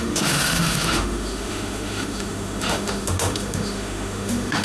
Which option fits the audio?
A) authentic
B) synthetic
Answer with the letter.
B